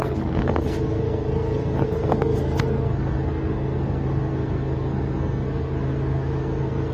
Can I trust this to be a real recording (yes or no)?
no